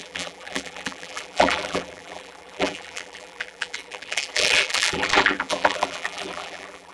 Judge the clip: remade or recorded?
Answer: remade